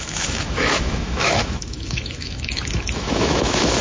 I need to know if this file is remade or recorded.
remade